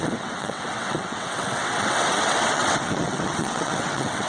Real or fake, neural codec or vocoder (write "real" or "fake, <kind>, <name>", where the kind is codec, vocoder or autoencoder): fake, vocoder, WaveNeXt